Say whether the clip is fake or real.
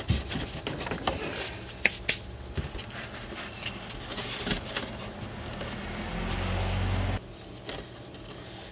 real